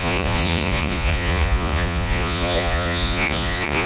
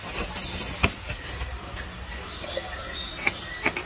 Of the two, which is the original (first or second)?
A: second